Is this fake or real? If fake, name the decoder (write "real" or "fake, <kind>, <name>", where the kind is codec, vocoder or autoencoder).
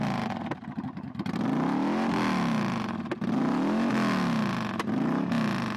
real